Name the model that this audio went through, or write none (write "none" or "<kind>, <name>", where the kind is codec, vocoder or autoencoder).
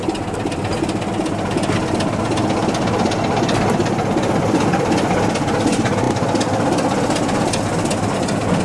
none